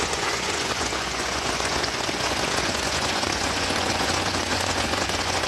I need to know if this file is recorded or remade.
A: remade